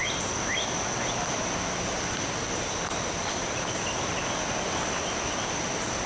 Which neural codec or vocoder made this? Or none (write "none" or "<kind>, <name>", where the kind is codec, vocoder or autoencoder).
none